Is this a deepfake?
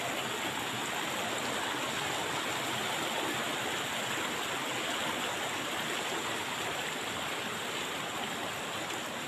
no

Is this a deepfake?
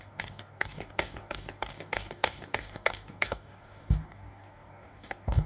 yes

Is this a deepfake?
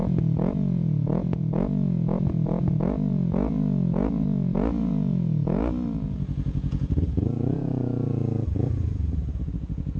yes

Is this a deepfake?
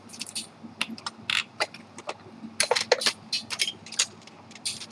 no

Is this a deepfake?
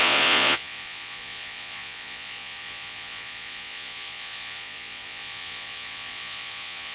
yes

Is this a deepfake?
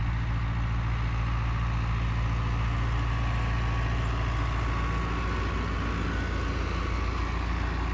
no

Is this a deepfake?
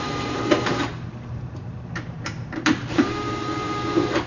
yes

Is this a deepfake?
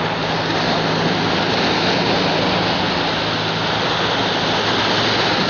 no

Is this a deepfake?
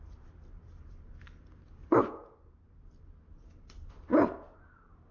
yes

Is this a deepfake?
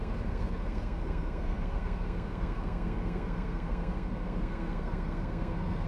yes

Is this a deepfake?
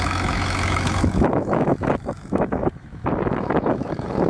yes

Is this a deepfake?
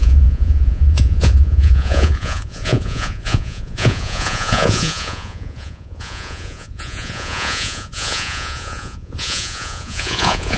yes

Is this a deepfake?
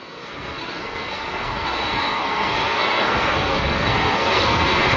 yes